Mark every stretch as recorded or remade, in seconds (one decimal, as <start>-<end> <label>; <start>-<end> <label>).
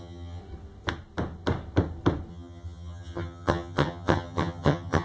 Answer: 0.0-0.4 remade; 0.4-2.3 recorded; 2.3-5.0 remade